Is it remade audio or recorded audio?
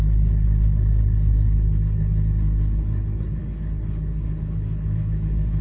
remade